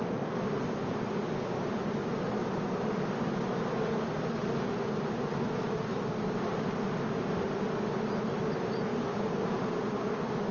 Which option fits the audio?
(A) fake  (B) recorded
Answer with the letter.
B